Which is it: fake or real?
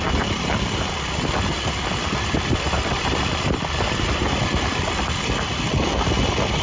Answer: fake